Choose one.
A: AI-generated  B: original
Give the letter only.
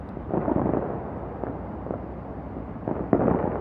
B